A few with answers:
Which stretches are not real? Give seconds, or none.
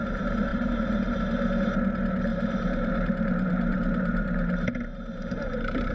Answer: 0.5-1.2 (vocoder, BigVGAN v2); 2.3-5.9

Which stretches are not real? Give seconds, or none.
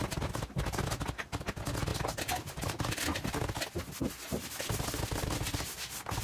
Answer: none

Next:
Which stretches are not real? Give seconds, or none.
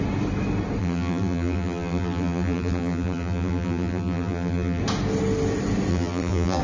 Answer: 0.8-4.8 (vocoder, BigVGAN v2); 5.9-6.6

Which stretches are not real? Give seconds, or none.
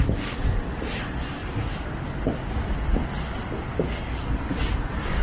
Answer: none